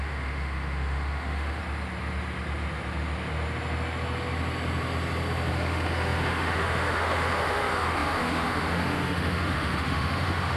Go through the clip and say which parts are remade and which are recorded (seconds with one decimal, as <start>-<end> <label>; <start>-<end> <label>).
0.0-1.6 remade; 1.6-5.5 recorded; 5.5-10.6 remade